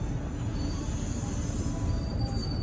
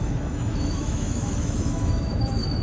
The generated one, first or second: second